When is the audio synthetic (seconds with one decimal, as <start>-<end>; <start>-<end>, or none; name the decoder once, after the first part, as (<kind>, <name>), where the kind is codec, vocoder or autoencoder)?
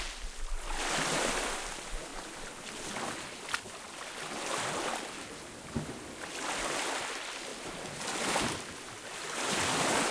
none